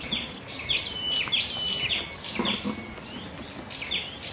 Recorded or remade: recorded